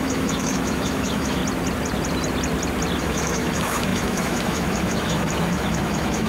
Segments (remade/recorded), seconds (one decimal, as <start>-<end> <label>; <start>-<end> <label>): 0.0-1.4 remade; 1.4-3.0 recorded; 3.0-6.3 remade